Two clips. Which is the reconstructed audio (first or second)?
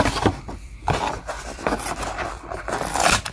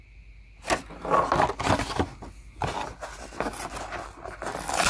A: first